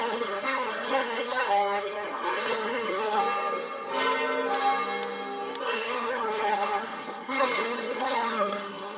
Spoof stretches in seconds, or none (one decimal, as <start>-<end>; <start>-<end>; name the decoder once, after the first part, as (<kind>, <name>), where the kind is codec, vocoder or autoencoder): 0.0-3.2 (codec, SNAC); 5.6-9.0